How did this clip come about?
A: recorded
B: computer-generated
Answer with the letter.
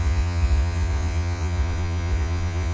B